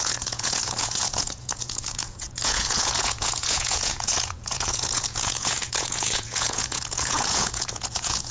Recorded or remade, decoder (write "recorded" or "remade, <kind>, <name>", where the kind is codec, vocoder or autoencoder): remade, vocoder, Vocos